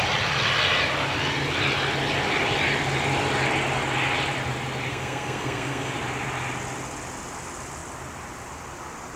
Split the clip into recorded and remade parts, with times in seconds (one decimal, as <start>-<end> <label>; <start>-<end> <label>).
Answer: 0.0-4.9 recorded; 4.9-5.9 remade; 5.9-9.2 recorded